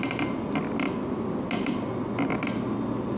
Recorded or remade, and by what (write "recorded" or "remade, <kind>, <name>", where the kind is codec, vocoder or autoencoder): recorded